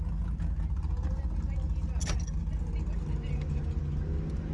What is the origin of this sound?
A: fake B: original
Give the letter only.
B